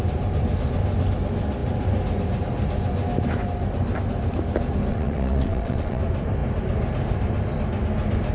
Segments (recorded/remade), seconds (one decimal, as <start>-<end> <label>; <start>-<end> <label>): 0.0-4.9 recorded; 4.9-6.0 remade; 6.0-8.3 recorded